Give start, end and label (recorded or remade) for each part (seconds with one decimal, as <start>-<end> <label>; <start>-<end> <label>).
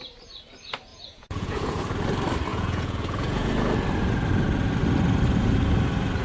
0.0-0.9 recorded; 0.9-1.8 remade; 1.8-2.5 recorded; 2.5-3.5 remade; 3.5-6.2 recorded